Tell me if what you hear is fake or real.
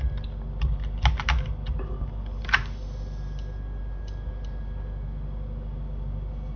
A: real